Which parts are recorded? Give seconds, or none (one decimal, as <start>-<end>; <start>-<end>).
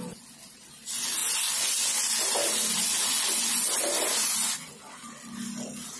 0.0-6.0